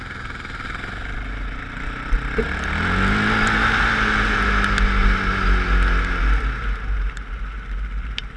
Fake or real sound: real